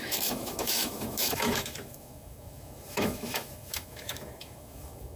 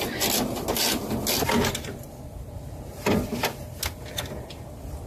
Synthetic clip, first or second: first